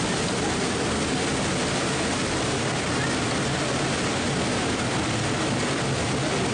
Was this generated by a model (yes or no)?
no